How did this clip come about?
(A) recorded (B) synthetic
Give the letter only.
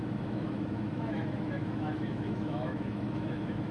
B